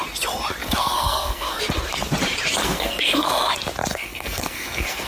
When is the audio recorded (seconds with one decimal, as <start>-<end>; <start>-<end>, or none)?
0.0-0.6; 1.6-2.6; 3.5-3.9